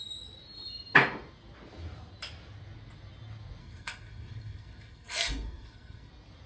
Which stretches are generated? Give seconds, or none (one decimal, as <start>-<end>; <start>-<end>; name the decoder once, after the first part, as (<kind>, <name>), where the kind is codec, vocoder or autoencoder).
3.6-6.1 (codec, SNAC)